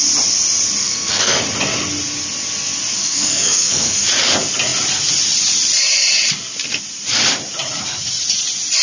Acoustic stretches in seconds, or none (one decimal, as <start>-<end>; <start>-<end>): 0.0-0.8; 1.4-3.0; 4.0-8.8